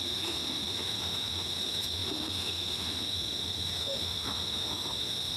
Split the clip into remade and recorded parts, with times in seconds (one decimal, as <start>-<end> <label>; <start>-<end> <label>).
0.0-5.4 remade